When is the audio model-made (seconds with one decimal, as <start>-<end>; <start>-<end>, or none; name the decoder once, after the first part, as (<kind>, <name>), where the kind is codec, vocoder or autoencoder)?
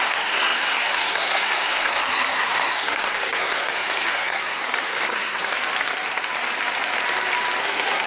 0.0-5.5 (codec, SNAC); 7.6-8.1